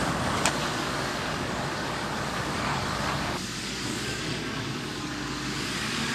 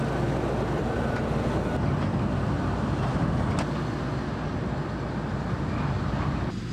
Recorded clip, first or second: second